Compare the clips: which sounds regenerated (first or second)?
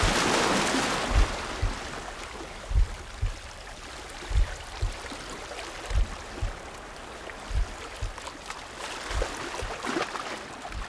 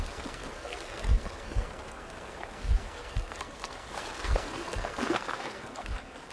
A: second